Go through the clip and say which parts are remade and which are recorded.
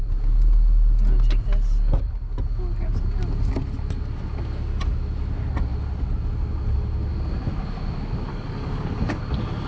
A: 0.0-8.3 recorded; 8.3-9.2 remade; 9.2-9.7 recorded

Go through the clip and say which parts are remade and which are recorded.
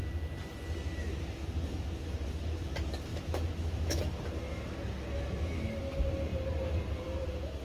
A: 0.0-3.1 recorded; 3.1-4.0 remade; 4.0-7.6 recorded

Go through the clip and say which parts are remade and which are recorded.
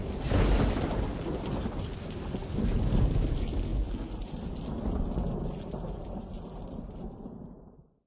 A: 0.0-8.1 recorded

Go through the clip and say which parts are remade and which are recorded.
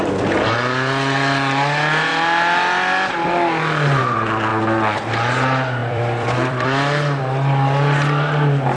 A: 0.0-5.8 recorded; 5.8-7.2 remade; 7.2-8.8 recorded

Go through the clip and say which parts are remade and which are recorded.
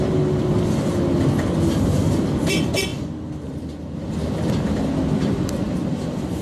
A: 0.0-6.4 recorded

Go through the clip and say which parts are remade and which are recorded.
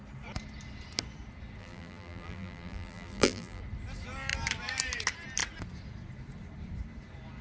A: 0.0-1.6 recorded; 1.6-3.6 remade; 3.6-7.4 recorded